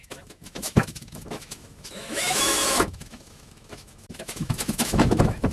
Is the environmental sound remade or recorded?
remade